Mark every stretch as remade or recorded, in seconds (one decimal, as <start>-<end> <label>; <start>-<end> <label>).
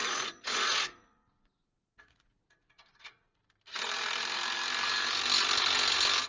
0.0-3.4 remade; 3.4-6.3 recorded